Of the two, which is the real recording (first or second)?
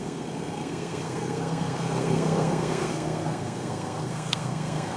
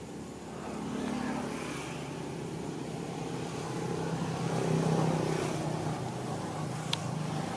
second